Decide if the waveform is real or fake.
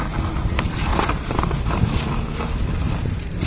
real